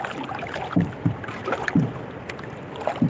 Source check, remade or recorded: recorded